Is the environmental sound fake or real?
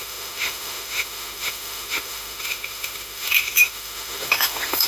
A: fake